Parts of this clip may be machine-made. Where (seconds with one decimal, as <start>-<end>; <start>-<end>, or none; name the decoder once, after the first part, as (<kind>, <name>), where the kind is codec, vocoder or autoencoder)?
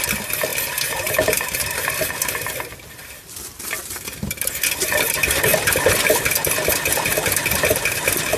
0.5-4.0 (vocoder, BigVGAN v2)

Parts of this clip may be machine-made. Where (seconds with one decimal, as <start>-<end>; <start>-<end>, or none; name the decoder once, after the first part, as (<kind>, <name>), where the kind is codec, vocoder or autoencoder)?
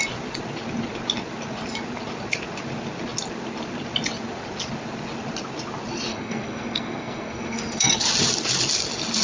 6.1-7.9 (codec, SNAC)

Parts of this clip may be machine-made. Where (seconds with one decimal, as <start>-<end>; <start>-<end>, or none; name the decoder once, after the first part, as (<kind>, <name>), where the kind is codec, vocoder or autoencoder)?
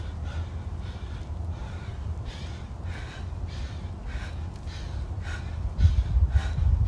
1.6-3.0 (vocoder, BigVGAN v2)